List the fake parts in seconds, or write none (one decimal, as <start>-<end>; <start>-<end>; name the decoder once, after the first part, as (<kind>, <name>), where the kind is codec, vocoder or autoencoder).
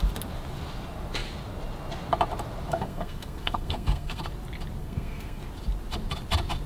2.7-4.2 (codec, SNAC); 4.8-5.4